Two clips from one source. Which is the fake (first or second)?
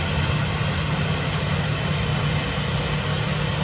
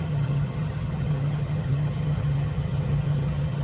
second